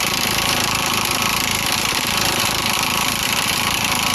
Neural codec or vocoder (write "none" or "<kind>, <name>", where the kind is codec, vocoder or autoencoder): vocoder, BigVGAN v2